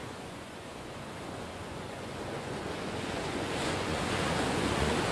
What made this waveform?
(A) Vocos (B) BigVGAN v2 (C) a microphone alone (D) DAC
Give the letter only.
A